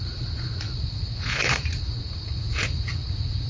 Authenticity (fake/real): fake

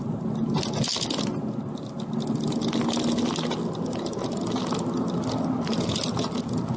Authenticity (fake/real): real